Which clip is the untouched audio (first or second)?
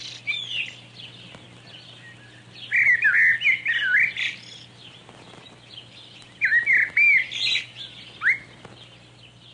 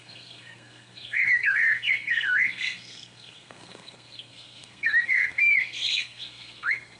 first